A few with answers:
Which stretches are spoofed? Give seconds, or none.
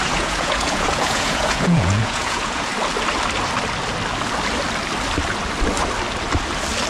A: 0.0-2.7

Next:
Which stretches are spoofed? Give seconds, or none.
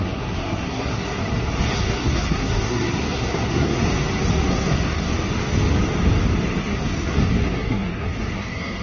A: 0.0-1.2; 1.7-3.9; 4.5-5.1; 6.6-8.8